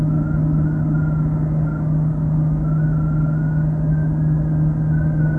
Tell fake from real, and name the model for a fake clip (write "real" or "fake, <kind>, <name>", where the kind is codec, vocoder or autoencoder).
real